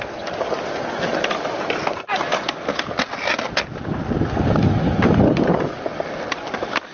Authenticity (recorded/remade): recorded